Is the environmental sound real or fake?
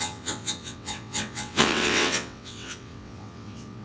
fake